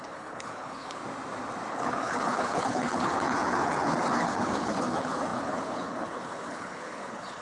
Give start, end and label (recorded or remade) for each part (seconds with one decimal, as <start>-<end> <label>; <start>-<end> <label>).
0.0-1.0 remade; 1.0-1.7 recorded; 1.7-7.4 remade

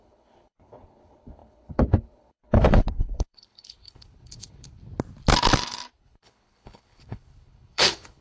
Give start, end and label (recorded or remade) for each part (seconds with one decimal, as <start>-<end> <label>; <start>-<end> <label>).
0.0-4.8 remade; 4.8-6.0 recorded; 6.0-8.2 remade

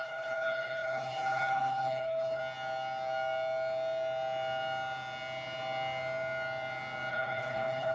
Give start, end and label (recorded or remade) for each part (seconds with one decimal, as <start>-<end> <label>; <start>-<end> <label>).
0.0-2.4 remade; 2.4-7.1 recorded; 7.1-7.9 remade

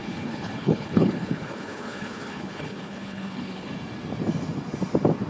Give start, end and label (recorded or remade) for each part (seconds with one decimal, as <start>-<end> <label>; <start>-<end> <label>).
0.0-3.7 remade; 3.7-5.3 recorded

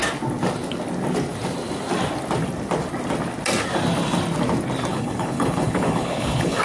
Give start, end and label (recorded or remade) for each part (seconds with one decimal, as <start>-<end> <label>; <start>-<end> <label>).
0.0-4.9 recorded; 4.9-6.6 remade

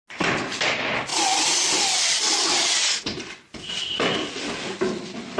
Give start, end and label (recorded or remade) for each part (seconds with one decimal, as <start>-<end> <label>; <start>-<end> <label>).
0.0-5.4 recorded